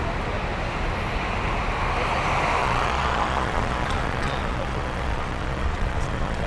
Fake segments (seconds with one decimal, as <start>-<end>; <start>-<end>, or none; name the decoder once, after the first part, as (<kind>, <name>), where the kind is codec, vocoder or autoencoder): 2.6-6.5 (vocoder, Vocos)